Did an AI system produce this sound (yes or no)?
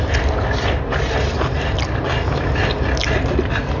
no